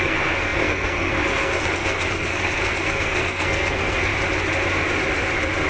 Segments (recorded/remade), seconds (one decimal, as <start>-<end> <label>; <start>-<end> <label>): 0.0-4.1 remade; 4.1-5.7 recorded

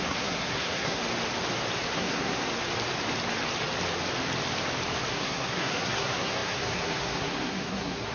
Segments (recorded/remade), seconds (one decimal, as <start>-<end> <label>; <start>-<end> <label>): 0.0-1.0 remade; 1.0-1.9 recorded; 1.9-2.5 remade; 2.5-5.1 recorded; 5.1-8.1 remade

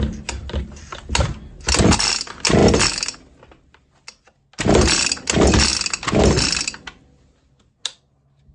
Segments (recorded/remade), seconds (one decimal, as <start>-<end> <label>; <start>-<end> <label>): 0.0-8.5 recorded